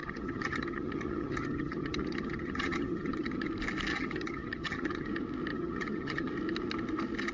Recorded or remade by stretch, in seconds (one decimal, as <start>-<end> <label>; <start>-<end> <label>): 0.0-3.5 remade; 3.5-3.9 recorded; 3.9-5.1 remade; 5.1-5.5 recorded; 5.5-6.3 remade; 6.3-7.3 recorded